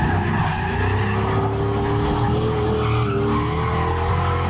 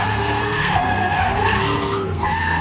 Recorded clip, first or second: first